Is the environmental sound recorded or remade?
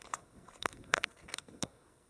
remade